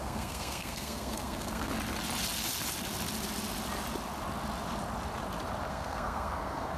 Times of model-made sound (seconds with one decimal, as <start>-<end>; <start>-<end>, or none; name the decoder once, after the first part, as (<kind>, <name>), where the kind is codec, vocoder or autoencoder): 0.0-1.7 (codec, SNAC); 5.7-6.8